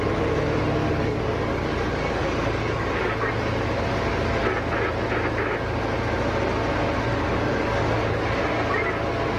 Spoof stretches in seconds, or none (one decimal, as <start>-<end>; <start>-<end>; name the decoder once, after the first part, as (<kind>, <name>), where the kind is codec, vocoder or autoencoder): 0.8-3.3 (codec, DAC); 3.9-4.4; 7.1-8.4